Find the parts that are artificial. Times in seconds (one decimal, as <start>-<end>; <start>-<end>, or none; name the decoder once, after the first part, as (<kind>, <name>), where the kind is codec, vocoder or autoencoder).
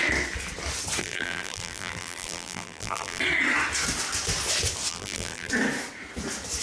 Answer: 1.0-3.2 (vocoder, BigVGAN v2); 4.9-5.5